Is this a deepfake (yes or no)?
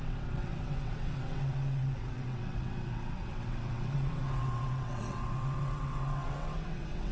yes